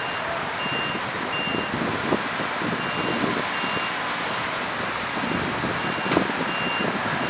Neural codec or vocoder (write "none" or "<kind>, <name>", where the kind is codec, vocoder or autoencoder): none